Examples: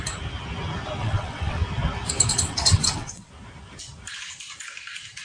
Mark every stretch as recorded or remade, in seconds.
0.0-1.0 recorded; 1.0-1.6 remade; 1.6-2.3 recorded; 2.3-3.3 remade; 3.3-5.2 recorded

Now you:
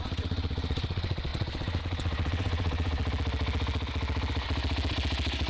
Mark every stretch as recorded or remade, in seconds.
0.0-3.0 remade; 3.0-5.5 recorded

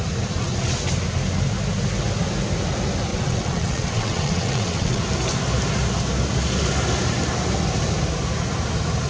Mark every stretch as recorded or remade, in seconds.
0.0-3.1 recorded; 3.1-5.0 remade; 5.0-9.1 recorded